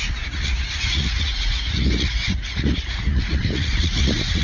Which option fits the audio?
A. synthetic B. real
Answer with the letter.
A